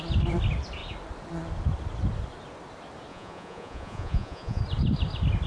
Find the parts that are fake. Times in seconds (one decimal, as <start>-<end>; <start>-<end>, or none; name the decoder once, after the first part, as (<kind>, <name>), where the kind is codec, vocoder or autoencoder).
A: 3.1-4.6 (vocoder, Vocos)